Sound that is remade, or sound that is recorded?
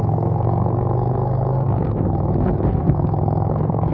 remade